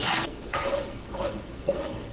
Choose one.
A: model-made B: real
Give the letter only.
A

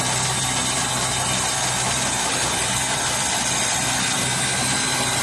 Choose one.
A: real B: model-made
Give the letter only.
A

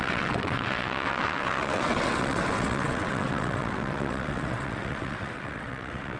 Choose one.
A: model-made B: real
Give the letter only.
A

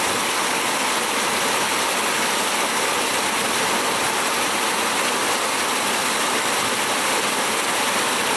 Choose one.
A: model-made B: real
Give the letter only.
B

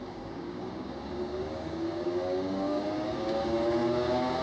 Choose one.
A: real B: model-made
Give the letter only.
B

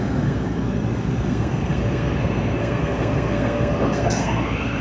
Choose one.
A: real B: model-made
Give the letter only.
B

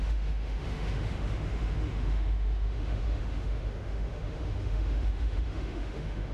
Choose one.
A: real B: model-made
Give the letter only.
B